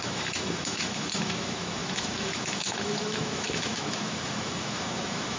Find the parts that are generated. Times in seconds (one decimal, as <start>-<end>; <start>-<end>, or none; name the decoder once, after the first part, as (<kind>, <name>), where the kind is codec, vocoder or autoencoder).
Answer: 0.0-5.4 (autoencoder, DAC-VAE)